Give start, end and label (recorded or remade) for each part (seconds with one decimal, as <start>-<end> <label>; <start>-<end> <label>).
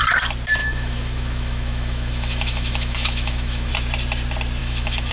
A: 0.0-0.6 recorded; 0.6-3.7 remade; 3.7-4.6 recorded; 4.6-5.1 remade